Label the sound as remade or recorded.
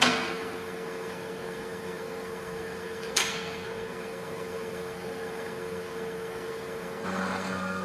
remade